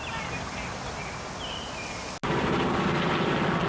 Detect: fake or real real